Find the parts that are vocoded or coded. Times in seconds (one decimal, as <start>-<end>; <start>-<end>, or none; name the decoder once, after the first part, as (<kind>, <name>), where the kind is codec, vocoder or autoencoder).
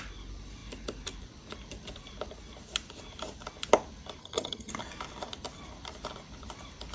4.2-4.7 (vocoder, HiFi-GAN)